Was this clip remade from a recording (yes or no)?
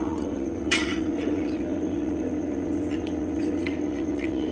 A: yes